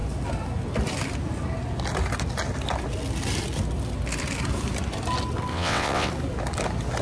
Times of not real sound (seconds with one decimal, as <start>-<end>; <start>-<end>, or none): 5.5-6.1